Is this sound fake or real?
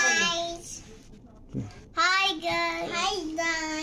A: real